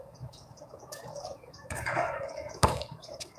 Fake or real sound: fake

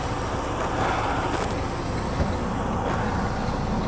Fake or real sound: real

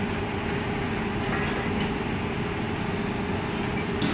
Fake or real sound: real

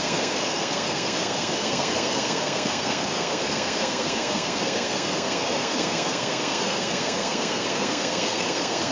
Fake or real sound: fake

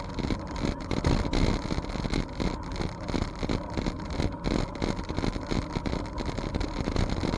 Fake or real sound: real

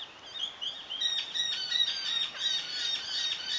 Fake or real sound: real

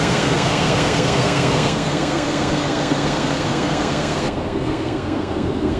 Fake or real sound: fake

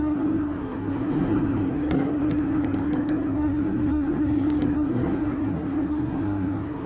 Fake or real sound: fake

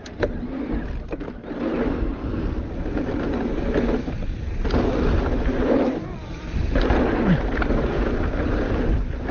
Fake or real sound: real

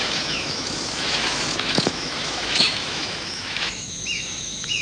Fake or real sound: fake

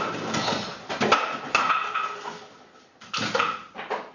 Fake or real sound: real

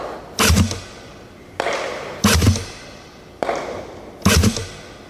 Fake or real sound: real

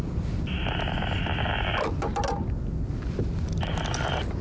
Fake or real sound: real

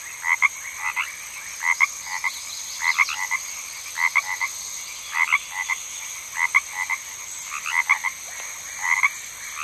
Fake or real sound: real